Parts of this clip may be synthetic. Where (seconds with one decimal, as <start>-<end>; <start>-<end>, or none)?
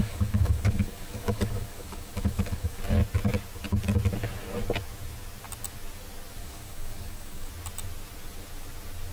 0.0-2.8; 6.4-7.5